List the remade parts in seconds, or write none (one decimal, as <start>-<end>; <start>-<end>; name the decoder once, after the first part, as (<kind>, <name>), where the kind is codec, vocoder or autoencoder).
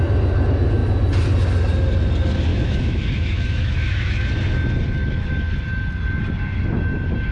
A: 2.5-4.3 (autoencoder, DAC-VAE)